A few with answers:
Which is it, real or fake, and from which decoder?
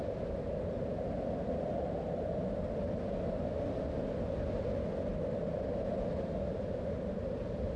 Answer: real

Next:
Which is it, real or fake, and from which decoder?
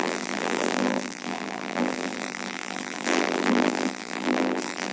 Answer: fake, vocoder, BigVGAN v2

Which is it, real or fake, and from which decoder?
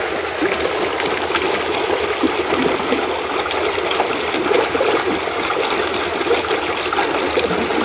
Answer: real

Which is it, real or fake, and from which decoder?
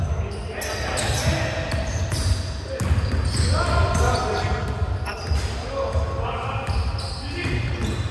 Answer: real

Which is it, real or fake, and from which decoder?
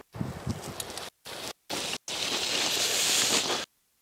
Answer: real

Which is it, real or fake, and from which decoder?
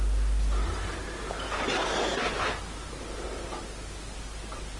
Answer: real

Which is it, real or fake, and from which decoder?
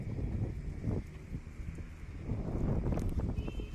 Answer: real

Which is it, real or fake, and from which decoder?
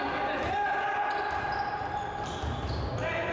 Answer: real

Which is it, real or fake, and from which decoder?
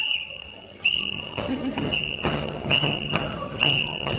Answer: fake, vocoder, HiFi-GAN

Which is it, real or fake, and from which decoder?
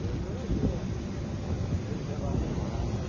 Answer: real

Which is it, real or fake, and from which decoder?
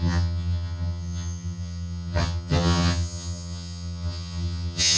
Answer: fake, vocoder, HiFi-GAN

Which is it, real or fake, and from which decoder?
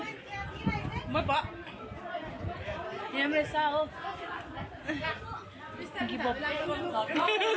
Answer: real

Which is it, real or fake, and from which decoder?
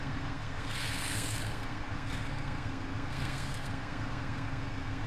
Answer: fake, codec, SNAC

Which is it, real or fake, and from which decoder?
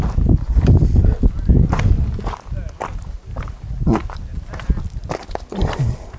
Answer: real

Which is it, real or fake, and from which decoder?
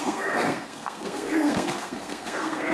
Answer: fake, codec, SNAC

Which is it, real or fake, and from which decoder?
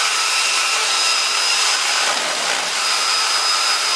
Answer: real